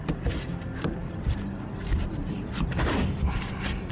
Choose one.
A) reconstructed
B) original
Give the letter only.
B